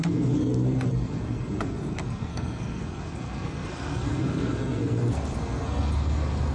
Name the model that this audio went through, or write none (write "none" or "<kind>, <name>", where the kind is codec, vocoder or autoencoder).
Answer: codec, SNAC